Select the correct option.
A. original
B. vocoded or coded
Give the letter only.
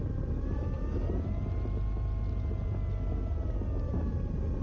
A